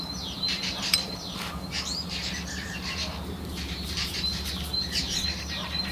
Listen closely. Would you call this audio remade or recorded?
remade